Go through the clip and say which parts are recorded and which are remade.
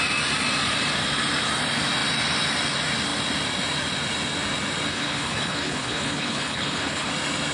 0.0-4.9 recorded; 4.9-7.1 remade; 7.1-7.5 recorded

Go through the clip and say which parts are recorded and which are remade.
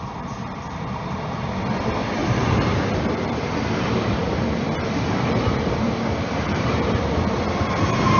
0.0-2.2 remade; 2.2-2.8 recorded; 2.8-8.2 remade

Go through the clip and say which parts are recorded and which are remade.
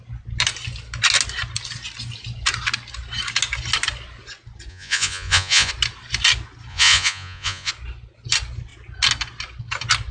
0.0-4.7 recorded; 4.7-5.7 remade; 5.7-6.7 recorded; 6.7-7.7 remade; 7.7-10.1 recorded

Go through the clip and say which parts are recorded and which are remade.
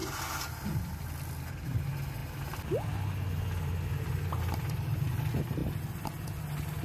0.0-6.8 recorded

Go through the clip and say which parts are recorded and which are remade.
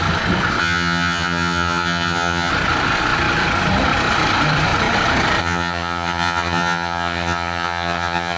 0.0-0.6 recorded; 0.6-2.5 remade; 2.5-5.4 recorded; 5.4-8.4 remade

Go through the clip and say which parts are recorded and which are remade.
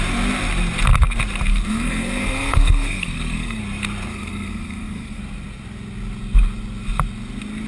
0.0-1.5 recorded; 1.5-3.6 remade; 3.6-4.1 recorded; 4.1-5.2 remade; 5.2-7.7 recorded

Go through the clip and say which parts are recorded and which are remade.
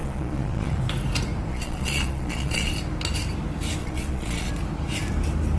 0.0-0.8 remade; 0.8-1.5 recorded; 1.5-2.8 remade; 2.8-3.8 recorded; 3.8-4.5 remade; 4.5-5.6 recorded